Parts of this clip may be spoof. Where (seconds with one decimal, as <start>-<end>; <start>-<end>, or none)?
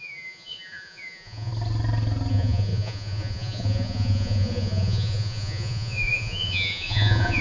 0.0-1.5; 2.3-7.4